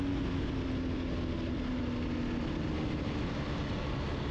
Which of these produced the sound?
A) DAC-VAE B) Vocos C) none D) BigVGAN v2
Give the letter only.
C